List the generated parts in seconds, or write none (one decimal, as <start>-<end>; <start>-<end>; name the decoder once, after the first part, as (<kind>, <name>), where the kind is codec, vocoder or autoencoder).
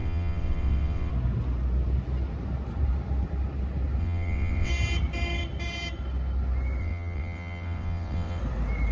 0.0-1.1 (vocoder, WaveNeXt); 4.0-4.7; 6.8-8.4